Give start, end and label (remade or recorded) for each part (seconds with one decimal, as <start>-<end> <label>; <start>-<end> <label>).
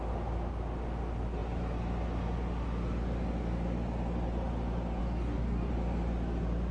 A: 0.0-5.0 recorded; 5.0-5.7 remade; 5.7-6.7 recorded